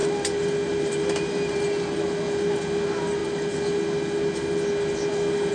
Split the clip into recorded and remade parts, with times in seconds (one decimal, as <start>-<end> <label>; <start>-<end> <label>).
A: 0.0-5.5 recorded